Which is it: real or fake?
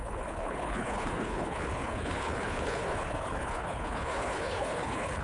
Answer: fake